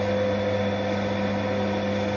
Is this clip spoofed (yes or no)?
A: no